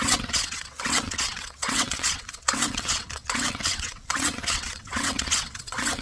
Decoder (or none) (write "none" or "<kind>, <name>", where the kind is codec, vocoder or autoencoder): vocoder, WaveNeXt